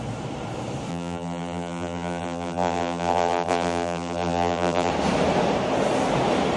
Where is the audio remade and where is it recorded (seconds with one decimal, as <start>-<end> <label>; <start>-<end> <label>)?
0.0-0.9 recorded; 0.9-4.9 remade; 4.9-6.6 recorded